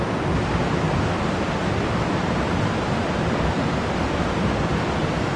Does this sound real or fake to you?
fake